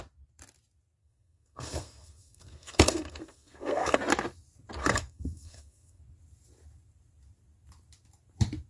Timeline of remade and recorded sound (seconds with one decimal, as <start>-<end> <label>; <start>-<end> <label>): 0.0-1.0 recorded; 1.0-4.0 remade; 4.0-4.8 recorded; 4.8-6.0 remade; 6.0-8.7 recorded